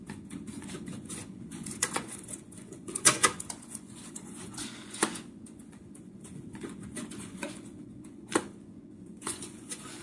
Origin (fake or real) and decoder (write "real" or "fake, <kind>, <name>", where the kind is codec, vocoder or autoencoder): fake, vocoder, Vocos